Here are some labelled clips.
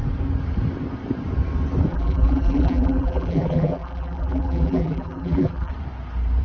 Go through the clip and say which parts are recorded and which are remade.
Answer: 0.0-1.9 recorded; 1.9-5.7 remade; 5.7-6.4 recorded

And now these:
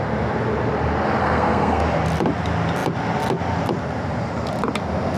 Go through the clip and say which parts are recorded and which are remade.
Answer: 0.0-1.2 recorded; 1.2-1.8 remade; 1.8-5.2 recorded

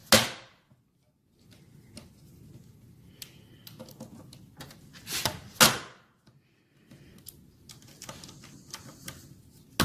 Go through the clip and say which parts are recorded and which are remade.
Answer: 0.0-9.8 recorded

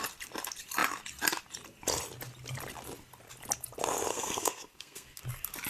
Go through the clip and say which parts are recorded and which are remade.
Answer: 0.0-4.1 recorded; 4.1-5.2 remade; 5.2-5.7 recorded

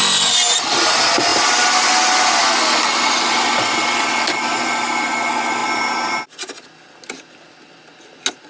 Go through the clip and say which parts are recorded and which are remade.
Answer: 0.0-8.5 recorded

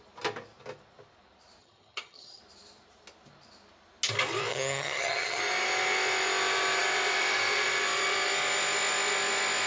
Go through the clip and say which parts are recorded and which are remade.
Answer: 0.0-1.6 recorded; 1.6-2.4 remade; 2.4-4.5 recorded; 4.5-5.4 remade; 5.4-9.7 recorded

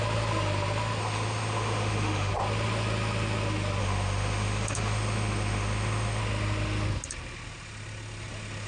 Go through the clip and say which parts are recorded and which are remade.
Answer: 0.0-1.0 recorded; 1.0-2.3 remade; 2.3-3.8 recorded; 3.8-6.2 remade; 6.2-8.7 recorded